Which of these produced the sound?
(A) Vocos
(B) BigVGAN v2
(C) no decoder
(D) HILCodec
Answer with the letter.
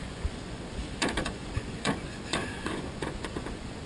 A